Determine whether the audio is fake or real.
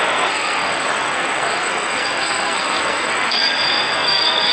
fake